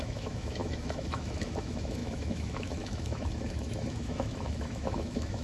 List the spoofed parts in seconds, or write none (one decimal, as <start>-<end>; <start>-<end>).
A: 0.0-5.4